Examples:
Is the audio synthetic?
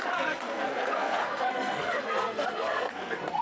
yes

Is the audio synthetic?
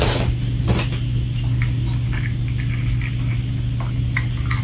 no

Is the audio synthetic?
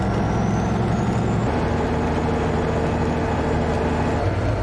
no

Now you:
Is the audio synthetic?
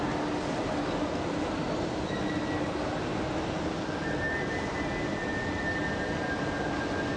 no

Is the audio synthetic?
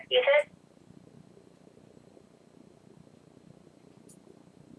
no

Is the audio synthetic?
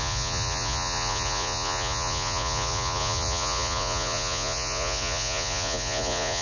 yes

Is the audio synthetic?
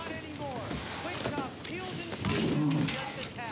no